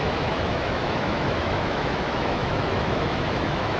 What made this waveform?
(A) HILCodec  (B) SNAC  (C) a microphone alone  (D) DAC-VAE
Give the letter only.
D